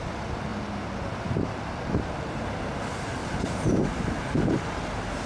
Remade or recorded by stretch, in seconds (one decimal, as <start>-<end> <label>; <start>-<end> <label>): 0.0-3.2 recorded; 3.2-4.6 remade; 4.6-5.3 recorded